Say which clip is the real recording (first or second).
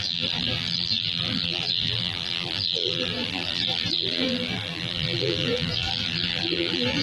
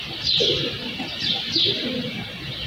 second